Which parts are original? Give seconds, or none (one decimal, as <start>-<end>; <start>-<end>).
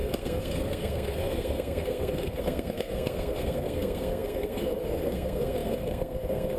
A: none